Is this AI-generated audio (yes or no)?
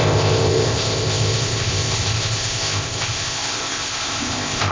yes